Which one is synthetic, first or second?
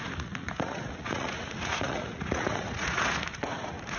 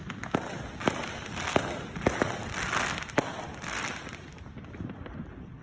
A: first